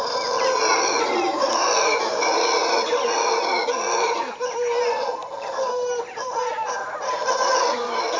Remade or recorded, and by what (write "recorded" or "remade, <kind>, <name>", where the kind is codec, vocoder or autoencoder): recorded